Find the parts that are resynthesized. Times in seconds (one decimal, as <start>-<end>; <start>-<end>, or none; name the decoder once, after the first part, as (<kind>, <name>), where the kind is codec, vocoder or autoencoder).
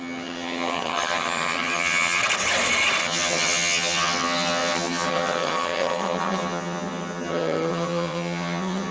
0.0-2.2 (vocoder, HiFi-GAN); 3.0-8.9